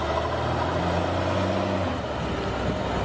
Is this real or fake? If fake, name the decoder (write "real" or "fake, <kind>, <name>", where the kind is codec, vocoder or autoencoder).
real